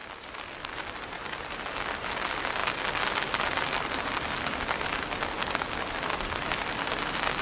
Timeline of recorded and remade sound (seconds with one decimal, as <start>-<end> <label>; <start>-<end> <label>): 0.0-7.4 recorded

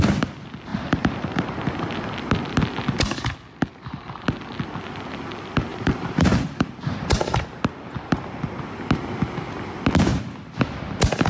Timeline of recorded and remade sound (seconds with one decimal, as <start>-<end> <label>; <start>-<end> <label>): 0.0-0.7 recorded; 0.7-1.4 remade; 1.4-5.7 recorded; 5.7-7.6 remade; 7.6-11.3 recorded

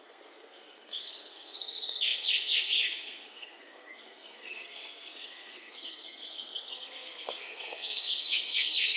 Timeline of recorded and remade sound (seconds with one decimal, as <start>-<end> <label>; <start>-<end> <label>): 0.0-9.0 remade

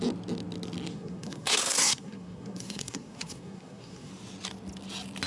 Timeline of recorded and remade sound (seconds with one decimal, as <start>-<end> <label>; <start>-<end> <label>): 0.0-0.9 recorded; 0.9-4.1 remade; 4.1-5.3 recorded

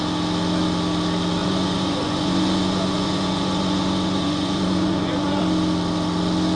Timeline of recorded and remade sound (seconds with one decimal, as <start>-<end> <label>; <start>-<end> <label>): 0.0-1.4 recorded; 1.4-5.4 remade; 5.4-6.6 recorded

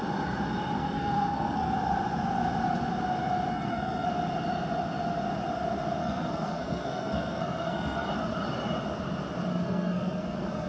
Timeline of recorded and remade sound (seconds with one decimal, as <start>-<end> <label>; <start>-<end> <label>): 0.0-0.8 recorded; 0.8-1.7 remade; 1.7-3.5 recorded; 3.5-4.1 remade; 4.1-6.0 recorded; 6.0-8.1 remade; 8.1-9.5 recorded; 9.5-10.7 remade

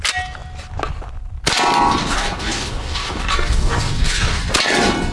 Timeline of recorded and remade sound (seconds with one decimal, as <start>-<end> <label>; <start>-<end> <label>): 0.0-2.0 recorded; 2.0-4.4 remade; 4.4-5.1 recorded

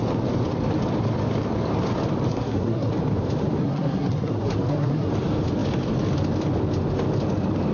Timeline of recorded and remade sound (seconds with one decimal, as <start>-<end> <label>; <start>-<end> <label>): 0.0-2.3 recorded; 2.3-2.9 remade; 2.9-3.6 recorded; 3.6-5.1 remade; 5.1-7.7 recorded